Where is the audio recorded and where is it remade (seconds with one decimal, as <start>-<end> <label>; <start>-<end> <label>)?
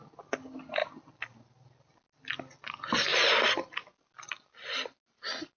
0.0-5.6 recorded